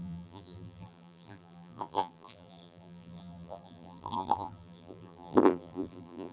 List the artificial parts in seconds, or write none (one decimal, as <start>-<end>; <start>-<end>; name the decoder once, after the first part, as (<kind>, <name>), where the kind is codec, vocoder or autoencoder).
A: 0.0-6.3 (vocoder, BigVGAN v2)